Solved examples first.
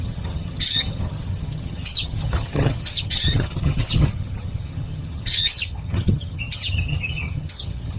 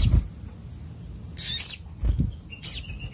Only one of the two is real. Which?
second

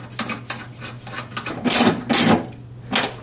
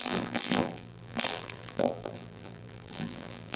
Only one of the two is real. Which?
first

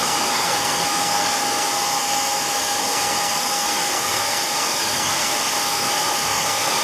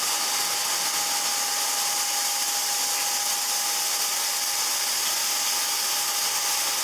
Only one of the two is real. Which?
second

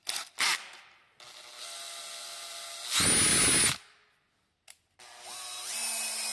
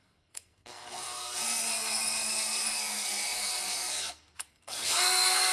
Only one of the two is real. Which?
first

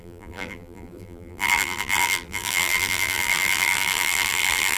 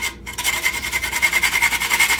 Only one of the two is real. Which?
second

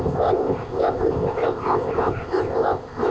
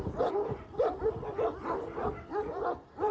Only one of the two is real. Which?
second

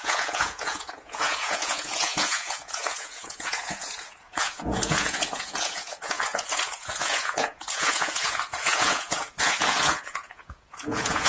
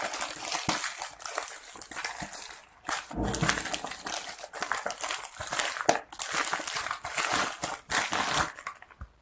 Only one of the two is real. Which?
second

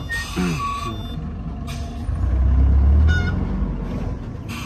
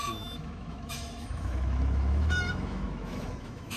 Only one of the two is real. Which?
first